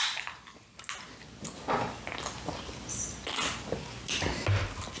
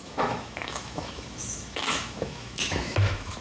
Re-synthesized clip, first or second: second